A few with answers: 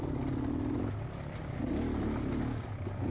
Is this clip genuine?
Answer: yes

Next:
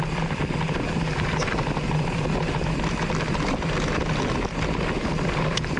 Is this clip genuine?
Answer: yes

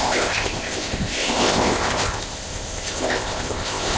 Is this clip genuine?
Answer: no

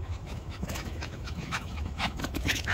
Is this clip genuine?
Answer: no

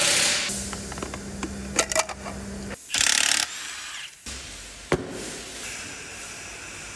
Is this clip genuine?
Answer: yes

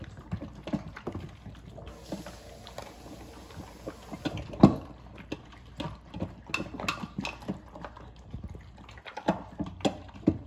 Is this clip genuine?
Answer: yes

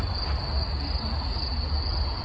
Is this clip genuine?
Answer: yes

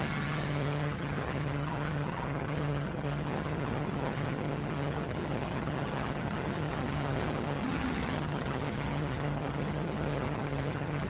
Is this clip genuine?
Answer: no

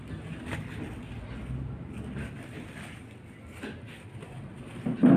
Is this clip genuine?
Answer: yes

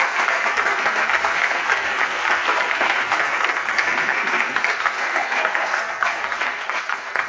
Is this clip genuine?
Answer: no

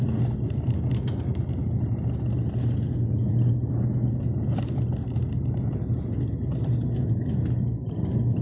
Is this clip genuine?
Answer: yes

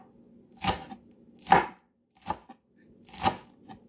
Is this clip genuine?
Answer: yes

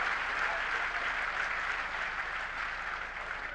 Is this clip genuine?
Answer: yes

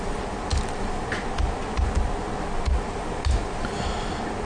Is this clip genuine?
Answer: yes